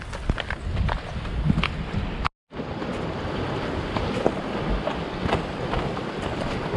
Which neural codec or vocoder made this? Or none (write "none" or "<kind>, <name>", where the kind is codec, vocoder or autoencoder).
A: none